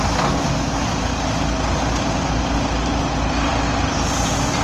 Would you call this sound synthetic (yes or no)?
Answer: no